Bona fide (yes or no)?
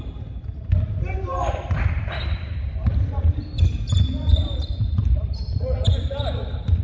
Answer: yes